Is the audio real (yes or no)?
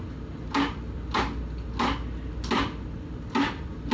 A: yes